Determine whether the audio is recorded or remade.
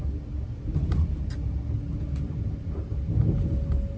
recorded